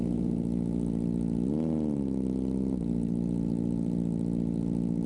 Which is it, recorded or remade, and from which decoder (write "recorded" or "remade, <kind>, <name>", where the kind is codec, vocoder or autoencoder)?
recorded